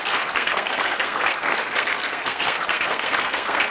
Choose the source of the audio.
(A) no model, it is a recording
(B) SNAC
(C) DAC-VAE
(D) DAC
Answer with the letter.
B